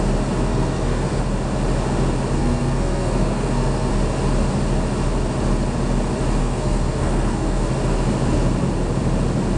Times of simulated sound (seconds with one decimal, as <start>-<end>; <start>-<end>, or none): 0.5-1.2; 2.4-3.9; 6.4-7.7